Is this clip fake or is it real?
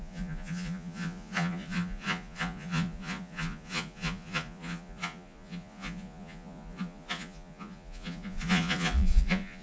fake